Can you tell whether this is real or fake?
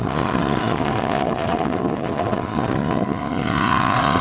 fake